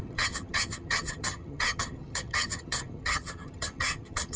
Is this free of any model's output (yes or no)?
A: no